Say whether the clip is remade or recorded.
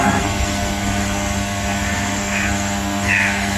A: remade